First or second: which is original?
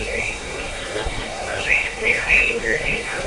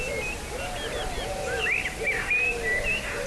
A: second